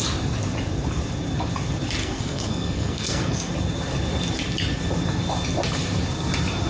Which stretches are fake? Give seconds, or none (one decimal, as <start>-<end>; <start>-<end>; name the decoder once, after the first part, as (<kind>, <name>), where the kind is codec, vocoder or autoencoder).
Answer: 2.0-3.5 (codec, SNAC)

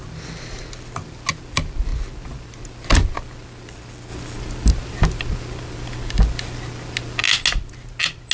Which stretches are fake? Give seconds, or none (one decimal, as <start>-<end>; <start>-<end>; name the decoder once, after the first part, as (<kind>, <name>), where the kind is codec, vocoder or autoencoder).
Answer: none

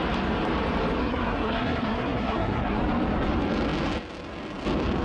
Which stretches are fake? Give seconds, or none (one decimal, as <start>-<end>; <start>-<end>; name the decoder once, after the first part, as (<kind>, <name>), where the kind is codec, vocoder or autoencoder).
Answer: 1.0-2.8 (codec, SNAC)